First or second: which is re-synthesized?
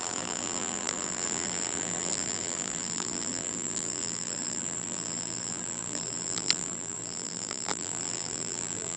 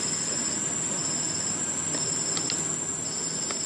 first